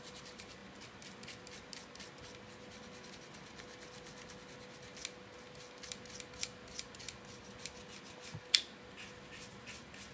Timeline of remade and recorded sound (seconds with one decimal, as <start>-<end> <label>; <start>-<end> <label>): 0.0-10.1 recorded